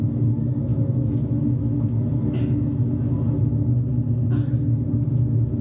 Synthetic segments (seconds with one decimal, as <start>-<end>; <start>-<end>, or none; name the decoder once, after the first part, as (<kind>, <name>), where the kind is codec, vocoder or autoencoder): none